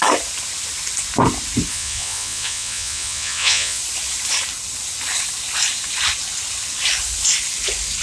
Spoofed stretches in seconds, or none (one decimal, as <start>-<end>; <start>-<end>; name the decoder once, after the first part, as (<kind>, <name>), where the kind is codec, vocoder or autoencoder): 1.7-3.8 (vocoder, Vocos)